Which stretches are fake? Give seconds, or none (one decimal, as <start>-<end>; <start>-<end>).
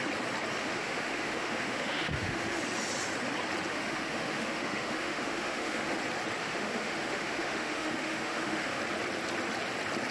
0.6-2.6; 3.7-6.0; 6.4-8.8